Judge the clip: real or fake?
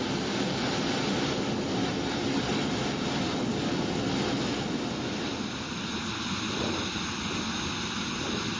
real